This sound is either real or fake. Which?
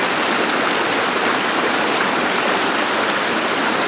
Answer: real